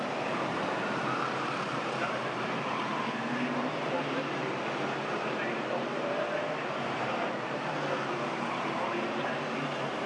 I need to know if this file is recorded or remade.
remade